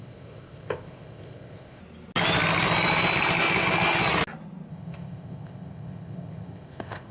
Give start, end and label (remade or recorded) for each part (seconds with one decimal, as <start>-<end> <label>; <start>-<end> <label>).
0.0-1.8 remade; 1.8-4.7 recorded; 4.7-7.1 remade